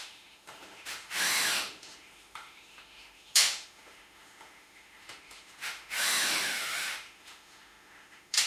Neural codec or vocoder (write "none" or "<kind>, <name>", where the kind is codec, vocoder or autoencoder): autoencoder, DAC-VAE